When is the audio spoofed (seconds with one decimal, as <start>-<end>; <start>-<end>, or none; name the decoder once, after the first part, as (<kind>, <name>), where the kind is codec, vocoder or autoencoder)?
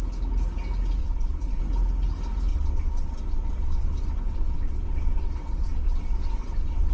1.0-1.6 (vocoder, WaveNeXt); 2.5-6.9